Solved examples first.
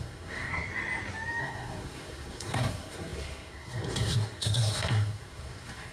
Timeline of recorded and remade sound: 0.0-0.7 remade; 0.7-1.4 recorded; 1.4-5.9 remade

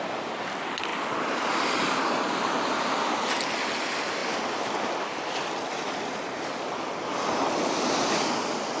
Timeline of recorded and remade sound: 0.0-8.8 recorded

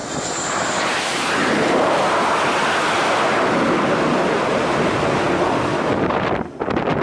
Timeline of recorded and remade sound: 0.0-1.4 recorded; 1.4-1.9 remade; 1.9-7.0 recorded